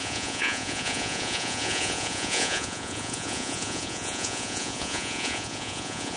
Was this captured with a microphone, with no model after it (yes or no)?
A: no